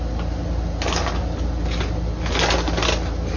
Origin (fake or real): real